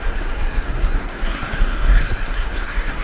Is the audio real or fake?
fake